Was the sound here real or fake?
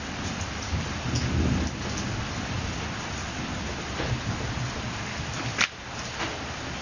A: real